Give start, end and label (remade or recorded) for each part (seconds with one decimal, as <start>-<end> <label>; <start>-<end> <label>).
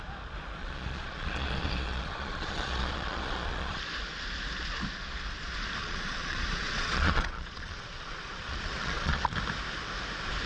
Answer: 0.0-0.6 recorded; 0.6-3.8 remade; 3.8-5.8 recorded; 5.8-9.2 remade; 9.2-10.5 recorded